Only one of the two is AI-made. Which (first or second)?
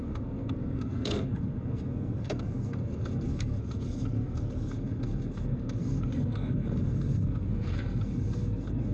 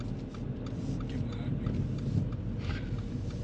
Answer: first